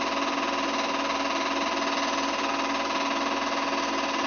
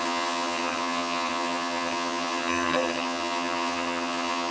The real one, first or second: first